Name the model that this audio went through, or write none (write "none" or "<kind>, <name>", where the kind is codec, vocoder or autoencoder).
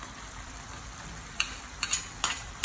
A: vocoder, BigVGAN v2